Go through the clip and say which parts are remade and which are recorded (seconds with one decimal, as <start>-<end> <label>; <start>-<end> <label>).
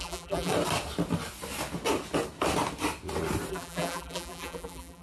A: 0.0-0.5 remade; 0.5-3.5 recorded; 3.5-5.0 remade